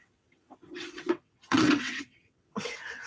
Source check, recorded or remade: remade